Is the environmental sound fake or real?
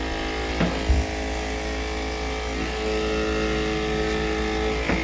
real